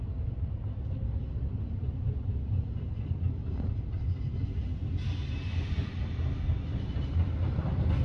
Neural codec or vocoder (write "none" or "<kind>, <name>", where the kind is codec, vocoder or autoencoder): none